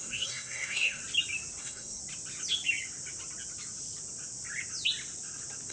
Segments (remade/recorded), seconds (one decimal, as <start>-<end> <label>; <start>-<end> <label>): 0.0-1.0 remade; 1.0-1.6 recorded; 1.6-2.0 remade; 2.0-5.7 recorded